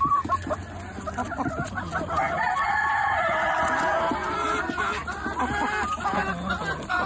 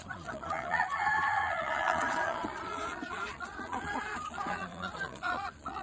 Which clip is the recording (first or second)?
first